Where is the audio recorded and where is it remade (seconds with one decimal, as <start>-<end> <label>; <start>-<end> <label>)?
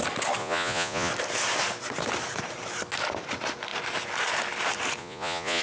0.0-0.4 recorded; 0.4-1.1 remade; 1.1-5.0 recorded; 5.0-5.6 remade